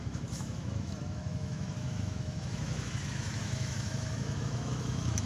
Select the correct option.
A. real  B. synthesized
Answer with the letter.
B